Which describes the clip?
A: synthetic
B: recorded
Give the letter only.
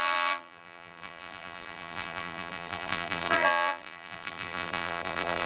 A